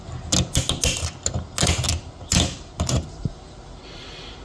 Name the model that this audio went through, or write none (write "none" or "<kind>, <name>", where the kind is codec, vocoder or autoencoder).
none